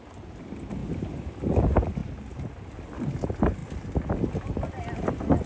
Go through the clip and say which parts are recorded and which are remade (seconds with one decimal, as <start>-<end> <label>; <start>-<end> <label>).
0.0-5.5 recorded